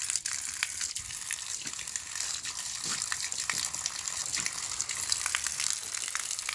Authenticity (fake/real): real